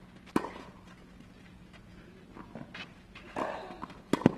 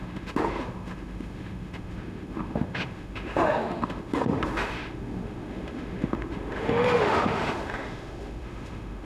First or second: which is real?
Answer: first